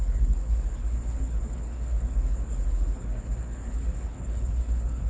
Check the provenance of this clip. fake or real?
fake